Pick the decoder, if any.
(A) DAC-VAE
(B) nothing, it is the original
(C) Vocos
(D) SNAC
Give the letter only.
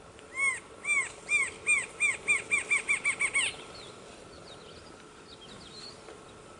B